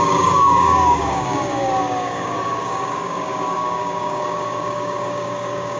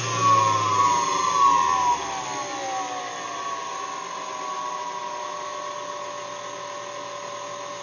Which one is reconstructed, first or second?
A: first